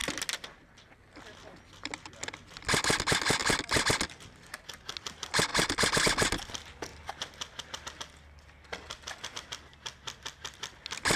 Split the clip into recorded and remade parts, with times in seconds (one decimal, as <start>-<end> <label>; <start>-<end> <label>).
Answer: 0.0-11.2 recorded